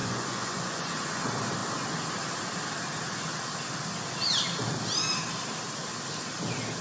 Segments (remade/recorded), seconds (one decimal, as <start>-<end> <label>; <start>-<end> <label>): 0.0-1.2 remade; 1.2-6.8 recorded